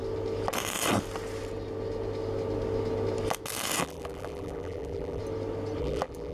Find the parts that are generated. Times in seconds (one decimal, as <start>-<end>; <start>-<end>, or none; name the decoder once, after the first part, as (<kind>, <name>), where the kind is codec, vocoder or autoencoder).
3.8-5.2 (vocoder, BigVGAN v2); 5.8-6.3